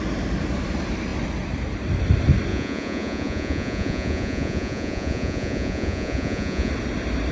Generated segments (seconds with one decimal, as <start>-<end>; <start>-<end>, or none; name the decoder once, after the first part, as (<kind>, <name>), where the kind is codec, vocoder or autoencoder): 2.5-6.7 (vocoder, Vocos)